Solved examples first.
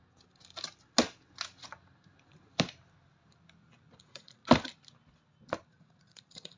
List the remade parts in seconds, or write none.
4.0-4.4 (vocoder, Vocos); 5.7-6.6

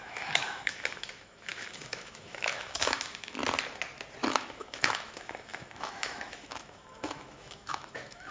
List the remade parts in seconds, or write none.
0.0-3.4 (autoencoder, DAC-VAE); 4.3-8.3

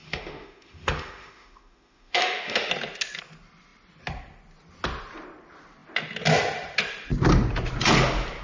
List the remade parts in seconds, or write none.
0.0-2.7 (autoencoder, DAC-VAE)

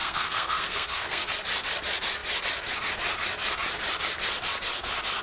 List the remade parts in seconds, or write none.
0.0-1.3 (codec, SNAC)

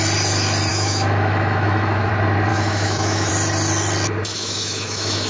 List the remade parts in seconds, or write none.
0.7-2.1 (autoencoder, DAC-VAE); 2.5-3.3; 4.3-5.3

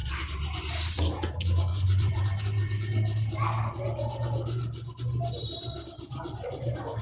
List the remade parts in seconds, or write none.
1.7-2.4 (vocoder, BigVGAN v2)